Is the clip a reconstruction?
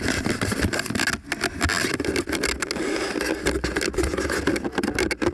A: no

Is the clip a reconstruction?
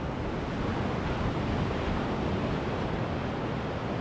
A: no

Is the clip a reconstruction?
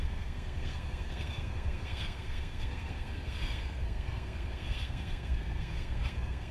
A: yes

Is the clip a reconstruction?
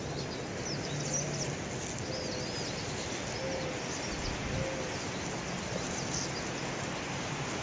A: no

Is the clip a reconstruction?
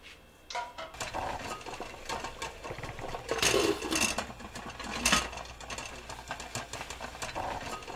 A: no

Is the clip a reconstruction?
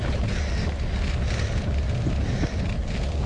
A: no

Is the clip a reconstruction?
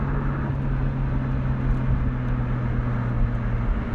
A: no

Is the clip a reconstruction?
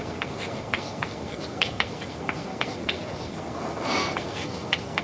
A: yes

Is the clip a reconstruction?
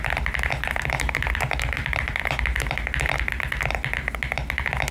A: no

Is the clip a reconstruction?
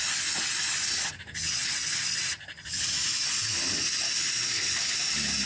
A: no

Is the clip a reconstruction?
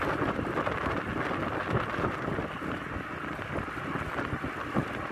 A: no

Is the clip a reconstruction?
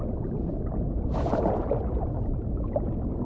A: no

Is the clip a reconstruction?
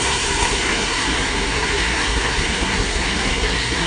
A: yes